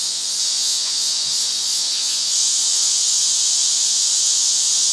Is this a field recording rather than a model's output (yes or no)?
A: no